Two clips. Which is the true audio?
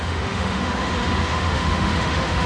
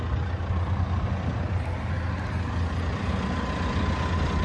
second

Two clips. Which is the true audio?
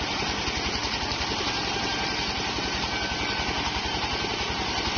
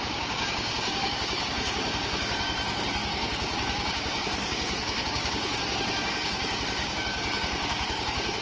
first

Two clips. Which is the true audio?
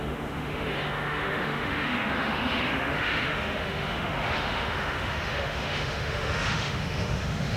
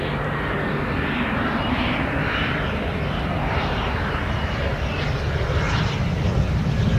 second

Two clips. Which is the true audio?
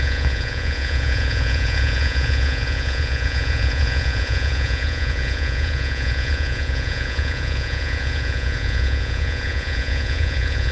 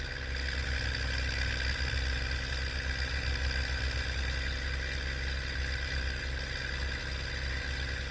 second